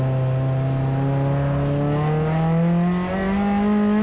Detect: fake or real real